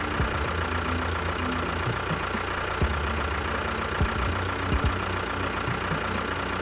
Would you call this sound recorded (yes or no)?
yes